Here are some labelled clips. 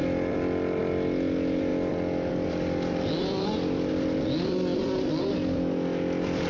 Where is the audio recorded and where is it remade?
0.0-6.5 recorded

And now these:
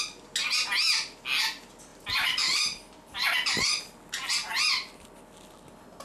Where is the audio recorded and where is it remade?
0.0-1.9 recorded; 1.9-3.1 remade; 3.1-6.0 recorded

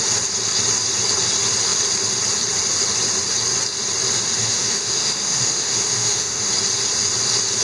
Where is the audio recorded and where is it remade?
0.0-4.4 recorded; 4.4-6.5 remade; 6.5-7.6 recorded

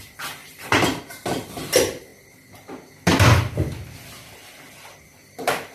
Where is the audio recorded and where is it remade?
0.0-0.4 recorded; 0.4-1.0 remade; 1.0-5.7 recorded